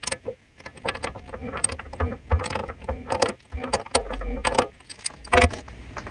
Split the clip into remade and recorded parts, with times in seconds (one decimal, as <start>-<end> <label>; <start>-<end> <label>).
0.0-1.4 recorded; 1.4-2.2 remade; 2.2-2.6 recorded; 2.6-3.4 remade; 3.4-6.1 recorded

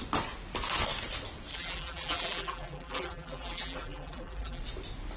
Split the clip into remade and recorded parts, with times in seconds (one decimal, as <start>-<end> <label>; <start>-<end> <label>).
0.0-1.5 recorded; 1.5-4.6 remade; 4.6-5.2 recorded